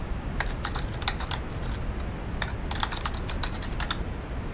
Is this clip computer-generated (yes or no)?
no